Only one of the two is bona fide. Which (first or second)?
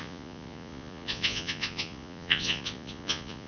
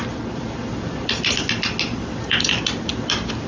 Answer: second